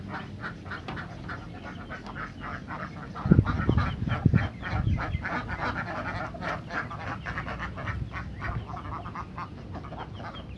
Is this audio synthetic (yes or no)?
no